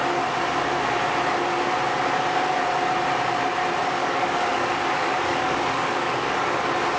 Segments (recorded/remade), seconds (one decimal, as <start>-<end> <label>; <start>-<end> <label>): 0.0-4.0 recorded; 4.0-6.6 remade; 6.6-7.0 recorded